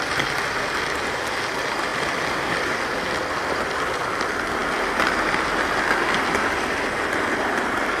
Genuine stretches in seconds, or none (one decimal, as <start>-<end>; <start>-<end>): 0.0-8.0